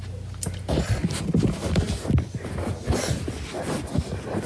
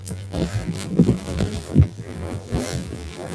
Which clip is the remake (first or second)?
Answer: second